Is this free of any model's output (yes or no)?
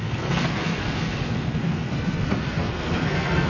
no